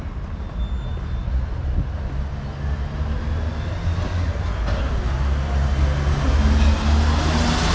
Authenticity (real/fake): real